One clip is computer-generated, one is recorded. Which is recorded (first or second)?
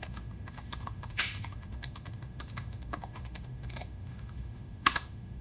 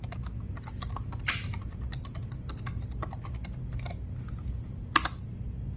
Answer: second